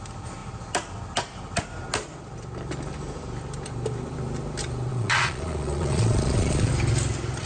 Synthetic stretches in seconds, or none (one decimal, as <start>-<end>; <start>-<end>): 4.9-6.7